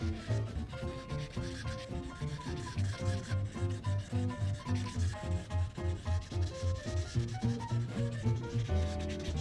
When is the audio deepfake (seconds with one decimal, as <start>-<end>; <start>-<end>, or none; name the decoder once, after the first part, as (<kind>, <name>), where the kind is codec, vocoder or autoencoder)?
2.3-2.9 (vocoder, BigVGAN v2); 7.3-7.9